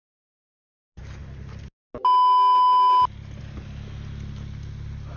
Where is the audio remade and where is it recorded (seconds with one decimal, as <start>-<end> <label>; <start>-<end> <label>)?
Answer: 0.0-5.2 recorded